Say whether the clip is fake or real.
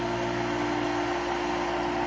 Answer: real